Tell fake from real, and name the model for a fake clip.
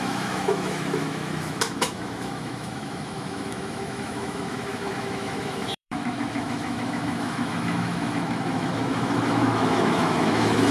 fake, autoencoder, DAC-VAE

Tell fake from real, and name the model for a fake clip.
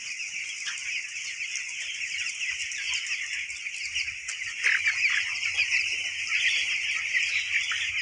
real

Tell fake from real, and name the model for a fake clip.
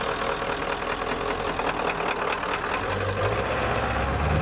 real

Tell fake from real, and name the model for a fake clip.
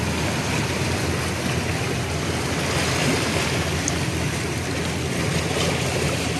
real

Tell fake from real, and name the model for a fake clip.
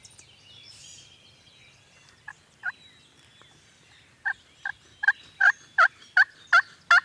real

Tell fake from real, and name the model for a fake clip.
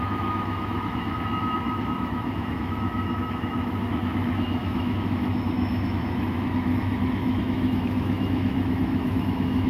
fake, autoencoder, DAC-VAE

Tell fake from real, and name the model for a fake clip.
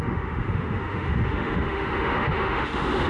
fake, autoencoder, DAC-VAE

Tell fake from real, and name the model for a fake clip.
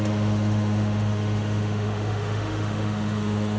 fake, autoencoder, DAC-VAE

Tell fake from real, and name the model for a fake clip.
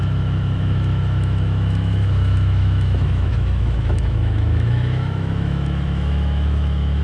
fake, autoencoder, DAC-VAE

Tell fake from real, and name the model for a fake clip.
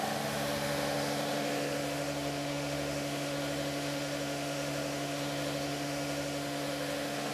fake, autoencoder, DAC-VAE